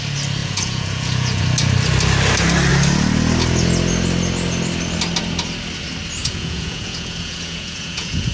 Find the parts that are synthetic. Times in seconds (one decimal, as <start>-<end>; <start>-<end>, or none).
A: 0.4-1.4; 6.2-8.3